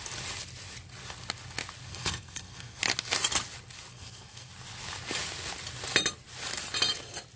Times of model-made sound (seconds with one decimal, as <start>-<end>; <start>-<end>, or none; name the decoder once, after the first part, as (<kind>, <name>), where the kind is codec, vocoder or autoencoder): 1.9-2.8 (codec, SNAC); 3.9-4.5